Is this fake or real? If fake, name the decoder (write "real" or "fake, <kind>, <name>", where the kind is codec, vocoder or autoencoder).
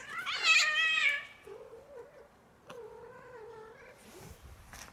real